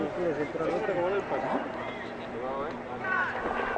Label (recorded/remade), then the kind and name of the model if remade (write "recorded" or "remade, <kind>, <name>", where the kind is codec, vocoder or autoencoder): recorded